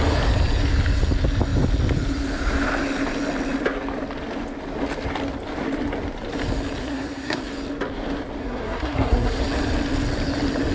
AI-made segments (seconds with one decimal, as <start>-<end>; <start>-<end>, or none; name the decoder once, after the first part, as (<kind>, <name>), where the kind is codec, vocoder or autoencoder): 6.8-7.4 (codec, SNAC); 8.4-9.4